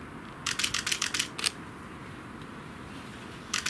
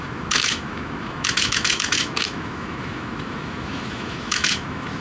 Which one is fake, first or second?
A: second